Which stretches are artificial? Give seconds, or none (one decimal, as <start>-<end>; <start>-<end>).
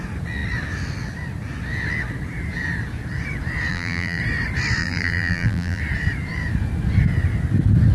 3.7-4.2; 4.8-5.8